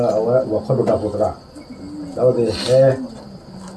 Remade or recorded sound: recorded